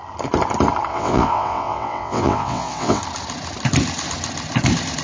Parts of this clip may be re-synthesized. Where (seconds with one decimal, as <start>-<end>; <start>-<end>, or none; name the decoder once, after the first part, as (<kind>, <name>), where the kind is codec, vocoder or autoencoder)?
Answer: 0.9-3.0 (vocoder, WaveNeXt)